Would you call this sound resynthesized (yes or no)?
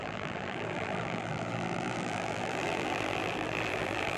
yes